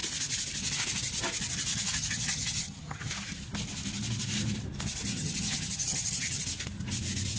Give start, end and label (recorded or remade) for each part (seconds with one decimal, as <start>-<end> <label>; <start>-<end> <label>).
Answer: 0.0-1.7 recorded; 1.7-3.1 remade; 3.1-5.1 recorded; 5.1-6.4 remade; 6.4-7.4 recorded